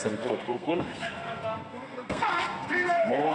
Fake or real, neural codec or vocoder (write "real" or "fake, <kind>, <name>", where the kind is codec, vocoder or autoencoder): fake, codec, SNAC